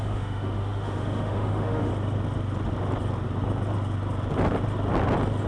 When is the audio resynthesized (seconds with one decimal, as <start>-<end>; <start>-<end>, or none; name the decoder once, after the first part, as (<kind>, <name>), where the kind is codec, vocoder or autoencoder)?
0.0-1.9 (autoencoder, DAC-VAE)